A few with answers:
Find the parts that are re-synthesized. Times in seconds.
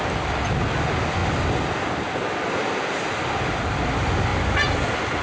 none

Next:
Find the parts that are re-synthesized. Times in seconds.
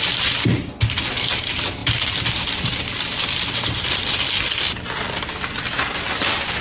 none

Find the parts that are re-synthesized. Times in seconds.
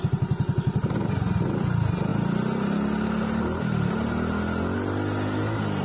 none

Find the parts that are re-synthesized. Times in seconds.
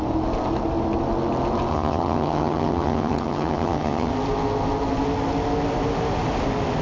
1.7-4.1 (vocoder, HiFi-GAN)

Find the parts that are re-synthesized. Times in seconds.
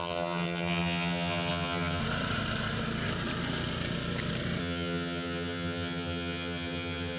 0.0-2.0 (vocoder, HiFi-GAN); 4.6-7.2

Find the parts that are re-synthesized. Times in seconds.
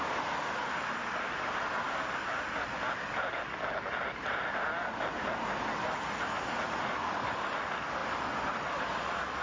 none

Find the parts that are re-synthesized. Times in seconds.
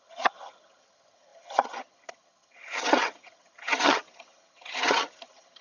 0.0-5.6 (vocoder, HiFi-GAN)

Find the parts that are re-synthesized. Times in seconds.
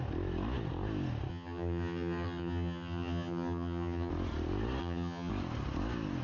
1.3-4.1 (vocoder, HiFi-GAN); 4.8-5.3